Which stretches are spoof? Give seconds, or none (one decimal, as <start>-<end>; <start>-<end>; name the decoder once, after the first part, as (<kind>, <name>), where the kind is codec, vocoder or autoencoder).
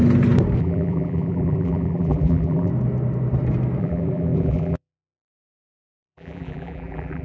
0.6-2.7 (vocoder, BigVGAN v2); 3.8-7.2